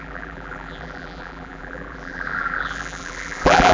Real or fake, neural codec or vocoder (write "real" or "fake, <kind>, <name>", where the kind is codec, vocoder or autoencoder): fake, vocoder, BigVGAN v2